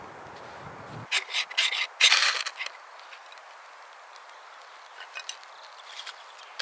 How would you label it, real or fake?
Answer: real